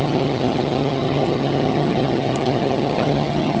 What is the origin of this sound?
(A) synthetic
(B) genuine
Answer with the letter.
A